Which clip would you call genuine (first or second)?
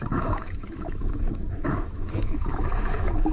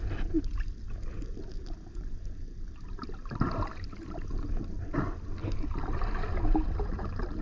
second